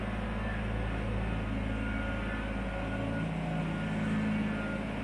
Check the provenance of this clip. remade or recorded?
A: recorded